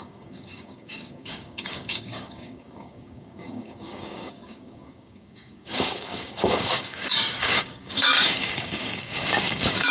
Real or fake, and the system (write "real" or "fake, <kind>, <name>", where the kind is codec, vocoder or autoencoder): fake, codec, DAC